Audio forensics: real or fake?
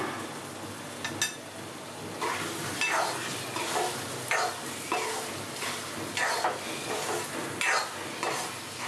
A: real